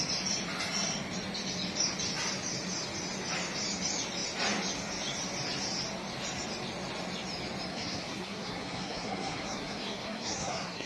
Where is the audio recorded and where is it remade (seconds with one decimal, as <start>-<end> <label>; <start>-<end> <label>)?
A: 0.0-7.7 recorded; 7.7-10.9 remade